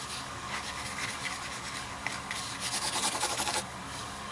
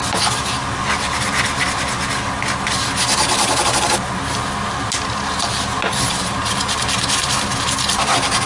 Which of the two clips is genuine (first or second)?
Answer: second